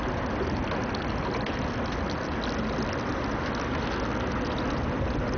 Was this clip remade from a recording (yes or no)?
no